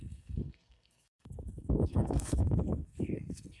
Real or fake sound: fake